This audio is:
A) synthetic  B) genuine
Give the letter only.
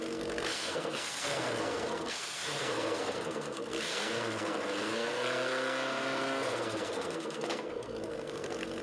A